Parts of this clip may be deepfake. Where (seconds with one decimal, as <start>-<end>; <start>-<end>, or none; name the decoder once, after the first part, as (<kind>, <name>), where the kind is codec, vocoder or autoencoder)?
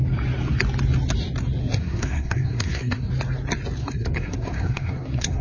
1.6-3.1 (codec, SNAC); 3.8-5.4